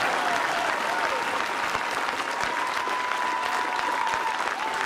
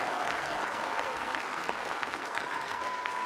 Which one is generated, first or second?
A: second